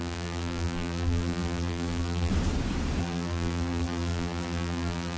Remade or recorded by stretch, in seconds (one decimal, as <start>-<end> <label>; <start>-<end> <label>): 0.0-2.3 remade; 2.3-3.0 recorded; 3.0-5.2 remade